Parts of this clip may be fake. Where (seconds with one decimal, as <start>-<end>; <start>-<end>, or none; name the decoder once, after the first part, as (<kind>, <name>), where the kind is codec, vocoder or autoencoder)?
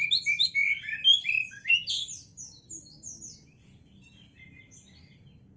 1.1-1.7 (vocoder, BigVGAN v2)